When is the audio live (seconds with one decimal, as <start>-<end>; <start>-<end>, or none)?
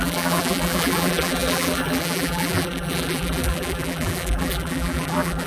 none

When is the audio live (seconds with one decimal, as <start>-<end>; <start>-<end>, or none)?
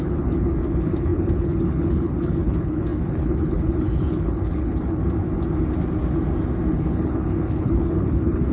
5.0-6.7